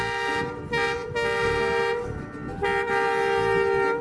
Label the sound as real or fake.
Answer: real